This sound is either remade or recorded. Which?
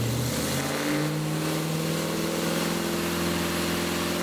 recorded